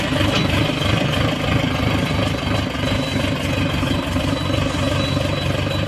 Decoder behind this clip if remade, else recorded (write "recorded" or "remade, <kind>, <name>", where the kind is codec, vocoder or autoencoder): recorded